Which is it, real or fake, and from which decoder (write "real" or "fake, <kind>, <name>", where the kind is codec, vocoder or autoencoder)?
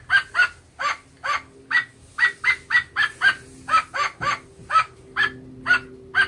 real